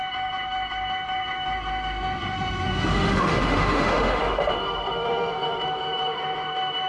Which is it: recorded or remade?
remade